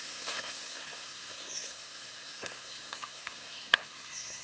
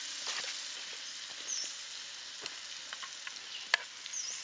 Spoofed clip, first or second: first